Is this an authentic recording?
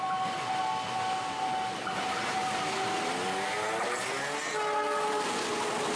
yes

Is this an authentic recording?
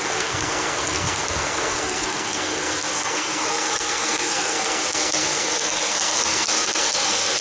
no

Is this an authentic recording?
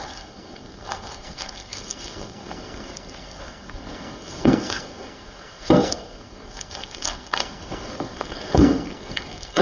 no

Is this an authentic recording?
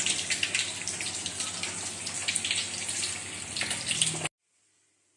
yes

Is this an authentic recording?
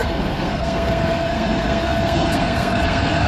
no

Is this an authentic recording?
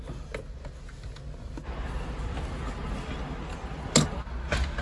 yes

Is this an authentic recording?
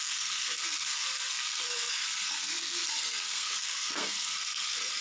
no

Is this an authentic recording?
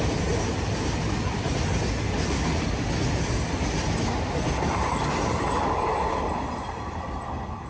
yes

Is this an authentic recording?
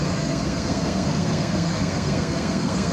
no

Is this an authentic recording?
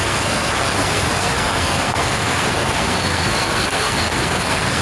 no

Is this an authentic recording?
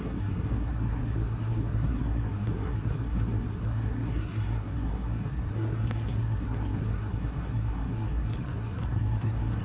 no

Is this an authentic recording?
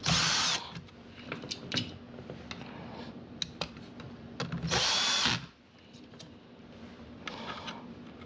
yes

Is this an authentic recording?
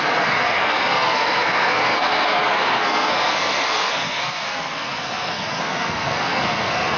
no